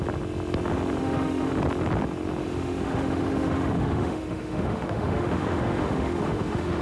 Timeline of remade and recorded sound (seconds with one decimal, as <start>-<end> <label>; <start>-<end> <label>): 0.0-1.0 recorded; 1.0-1.5 remade; 1.5-2.4 recorded; 2.4-6.8 remade